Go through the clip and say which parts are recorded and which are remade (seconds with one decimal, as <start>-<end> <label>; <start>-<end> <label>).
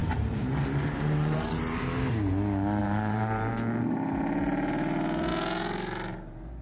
0.0-2.1 remade; 2.1-2.8 recorded; 2.8-3.5 remade; 3.5-6.6 recorded